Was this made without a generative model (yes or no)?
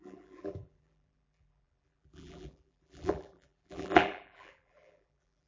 no